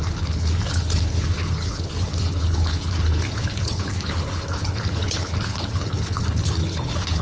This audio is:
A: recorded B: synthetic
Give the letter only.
B